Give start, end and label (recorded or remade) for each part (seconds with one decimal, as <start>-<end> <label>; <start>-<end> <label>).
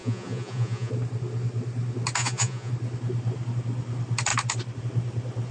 0.0-0.9 remade; 0.9-2.2 recorded; 2.2-2.7 remade; 2.7-5.5 recorded